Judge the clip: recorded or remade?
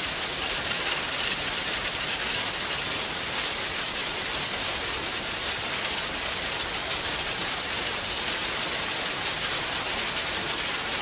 recorded